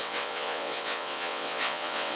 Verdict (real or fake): fake